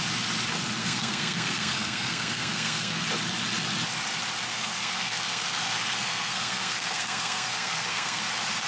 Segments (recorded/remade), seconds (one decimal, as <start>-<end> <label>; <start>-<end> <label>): 0.0-0.8 recorded; 0.8-3.0 remade; 3.0-4.5 recorded; 4.5-8.2 remade; 8.2-8.7 recorded